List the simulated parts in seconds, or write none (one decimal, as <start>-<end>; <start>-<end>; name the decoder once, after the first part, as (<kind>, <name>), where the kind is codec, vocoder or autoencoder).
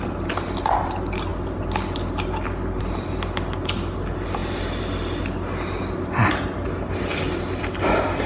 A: none